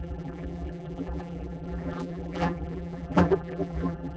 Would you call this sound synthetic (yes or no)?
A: yes